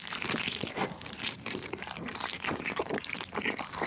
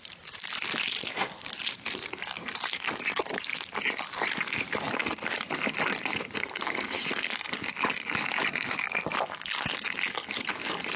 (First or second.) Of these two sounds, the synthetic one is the first